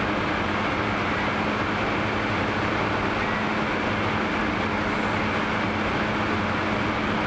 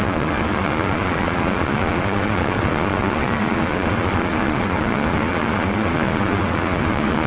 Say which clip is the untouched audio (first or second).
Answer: first